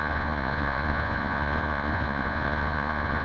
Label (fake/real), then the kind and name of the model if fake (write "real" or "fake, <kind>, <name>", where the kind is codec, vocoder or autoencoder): fake, vocoder, Vocos